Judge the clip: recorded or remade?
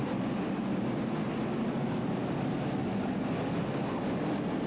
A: recorded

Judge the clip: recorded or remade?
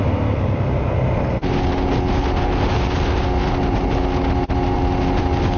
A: recorded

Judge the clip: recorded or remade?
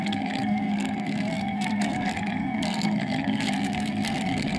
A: remade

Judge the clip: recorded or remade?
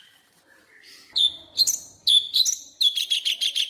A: remade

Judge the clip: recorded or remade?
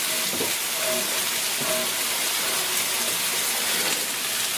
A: recorded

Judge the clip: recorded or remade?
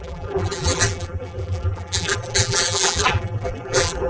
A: remade